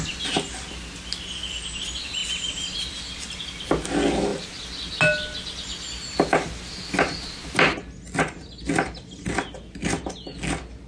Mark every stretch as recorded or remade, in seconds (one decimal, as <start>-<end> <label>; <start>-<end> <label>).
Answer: 0.0-10.9 recorded